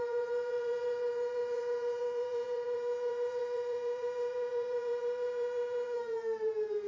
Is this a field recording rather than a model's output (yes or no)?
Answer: no